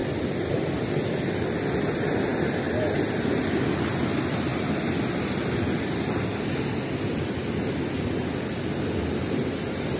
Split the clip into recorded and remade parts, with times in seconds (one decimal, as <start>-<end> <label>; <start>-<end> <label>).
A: 0.0-10.0 recorded